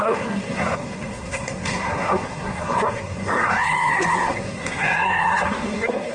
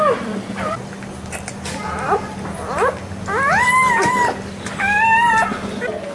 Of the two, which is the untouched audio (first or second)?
second